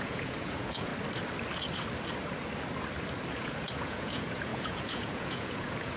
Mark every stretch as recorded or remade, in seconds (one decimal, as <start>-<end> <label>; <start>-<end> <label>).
0.0-0.9 remade; 0.9-3.3 recorded; 3.3-6.0 remade